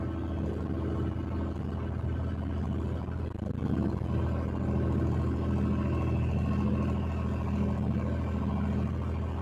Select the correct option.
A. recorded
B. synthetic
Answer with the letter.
A